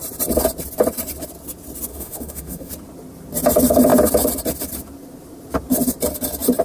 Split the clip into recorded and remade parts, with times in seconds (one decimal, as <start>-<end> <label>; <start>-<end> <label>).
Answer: 0.0-1.9 recorded; 1.9-2.7 remade; 2.7-6.6 recorded